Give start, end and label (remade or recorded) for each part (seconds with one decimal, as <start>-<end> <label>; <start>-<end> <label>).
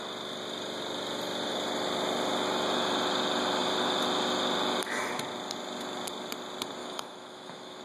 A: 0.0-6.8 recorded; 6.8-7.8 remade